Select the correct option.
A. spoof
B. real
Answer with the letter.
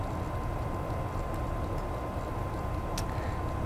B